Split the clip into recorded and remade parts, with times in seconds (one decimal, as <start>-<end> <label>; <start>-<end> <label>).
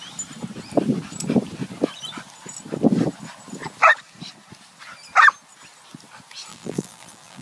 0.0-6.5 recorded; 6.5-7.4 remade